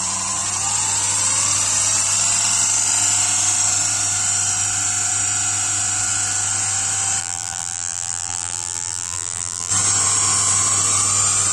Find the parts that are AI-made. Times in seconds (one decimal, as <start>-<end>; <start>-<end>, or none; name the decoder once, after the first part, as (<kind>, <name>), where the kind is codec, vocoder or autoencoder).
7.2-9.7 (vocoder, BigVGAN v2)

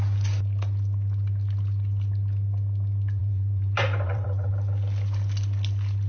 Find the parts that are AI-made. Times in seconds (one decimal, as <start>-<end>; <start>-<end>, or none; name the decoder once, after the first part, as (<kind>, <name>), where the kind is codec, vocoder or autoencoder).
3.2-4.5 (vocoder, BigVGAN v2)

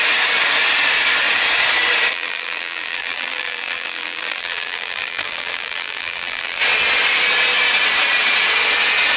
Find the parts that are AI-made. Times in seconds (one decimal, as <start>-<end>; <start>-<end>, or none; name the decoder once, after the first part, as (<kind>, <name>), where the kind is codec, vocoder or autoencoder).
2.1-6.6 (vocoder, BigVGAN v2)